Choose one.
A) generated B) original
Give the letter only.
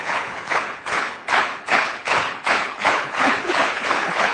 A